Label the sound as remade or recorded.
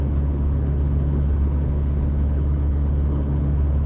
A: remade